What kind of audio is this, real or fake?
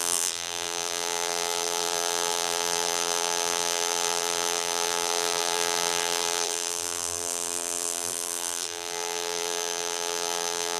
fake